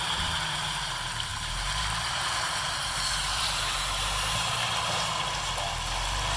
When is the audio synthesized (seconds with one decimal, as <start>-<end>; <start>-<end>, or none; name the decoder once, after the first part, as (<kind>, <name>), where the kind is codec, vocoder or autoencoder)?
1.3-5.1 (vocoder, BigVGAN v2)

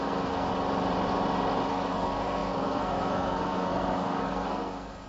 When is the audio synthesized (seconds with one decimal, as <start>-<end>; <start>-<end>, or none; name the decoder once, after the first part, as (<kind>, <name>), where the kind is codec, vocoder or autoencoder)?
0.0-0.5 (codec, SNAC); 1.7-5.1

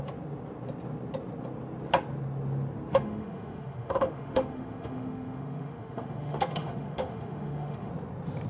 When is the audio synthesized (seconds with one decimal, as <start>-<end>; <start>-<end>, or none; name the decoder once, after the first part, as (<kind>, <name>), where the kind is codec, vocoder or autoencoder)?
2.9-7.9 (autoencoder, DAC-VAE)

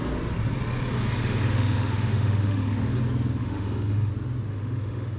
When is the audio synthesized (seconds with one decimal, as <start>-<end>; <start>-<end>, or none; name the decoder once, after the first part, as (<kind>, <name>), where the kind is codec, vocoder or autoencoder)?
1.2-3.0 (autoencoder, DAC-VAE); 3.4-4.1; 4.5-5.2

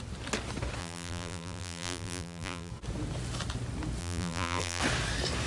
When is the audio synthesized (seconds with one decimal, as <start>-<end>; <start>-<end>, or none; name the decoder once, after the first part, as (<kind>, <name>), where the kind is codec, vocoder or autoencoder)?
0.8-2.7 (vocoder, BigVGAN v2); 4.0-4.8

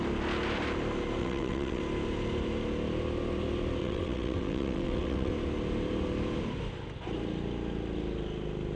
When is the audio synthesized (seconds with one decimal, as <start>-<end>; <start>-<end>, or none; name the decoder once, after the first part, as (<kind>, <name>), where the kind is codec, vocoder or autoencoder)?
1.2-1.8 (vocoder, WaveNeXt); 3.8-5.3

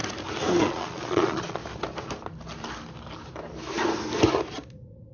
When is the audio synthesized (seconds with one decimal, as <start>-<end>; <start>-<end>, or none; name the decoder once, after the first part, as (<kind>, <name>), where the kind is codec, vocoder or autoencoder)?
0.6-1.6 (vocoder, Vocos)